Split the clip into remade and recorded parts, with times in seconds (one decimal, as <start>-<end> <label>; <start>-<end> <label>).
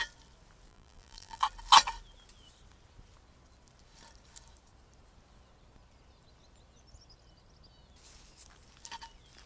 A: 0.0-0.7 recorded; 0.7-1.4 remade; 1.4-9.5 recorded